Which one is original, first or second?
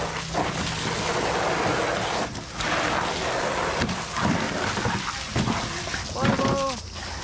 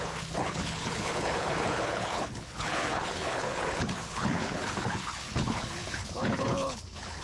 first